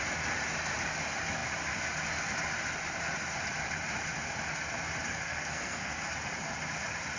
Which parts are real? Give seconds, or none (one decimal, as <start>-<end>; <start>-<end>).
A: 0.0-5.1; 6.1-7.2